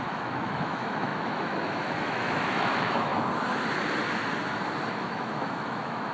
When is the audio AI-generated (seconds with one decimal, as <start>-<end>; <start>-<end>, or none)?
0.0-3.1; 4.9-6.1